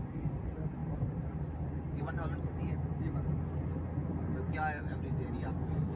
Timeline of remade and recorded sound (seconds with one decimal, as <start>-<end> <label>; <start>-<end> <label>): 0.0-6.0 recorded